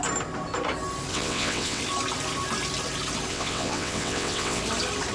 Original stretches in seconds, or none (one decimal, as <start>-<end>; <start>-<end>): 0.0-1.1; 1.8-3.3; 4.6-5.1